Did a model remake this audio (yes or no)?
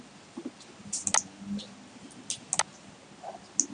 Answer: no